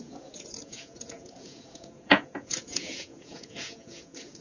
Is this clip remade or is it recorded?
remade